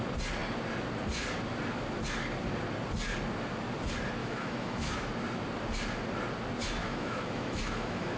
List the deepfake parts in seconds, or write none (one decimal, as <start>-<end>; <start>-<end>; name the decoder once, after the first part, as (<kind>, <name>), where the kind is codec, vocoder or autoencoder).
4.2-5.1 (autoencoder, DAC-VAE); 6.8-8.2